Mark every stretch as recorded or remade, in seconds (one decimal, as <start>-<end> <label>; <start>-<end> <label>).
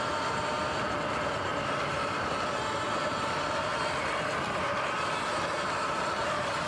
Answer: 0.0-6.7 recorded